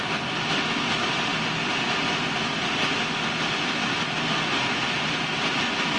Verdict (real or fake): real